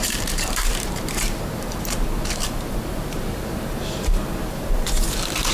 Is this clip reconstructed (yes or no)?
yes